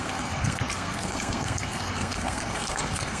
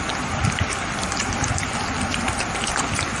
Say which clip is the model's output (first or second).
first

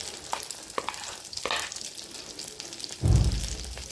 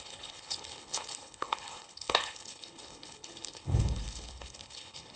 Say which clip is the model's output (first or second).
second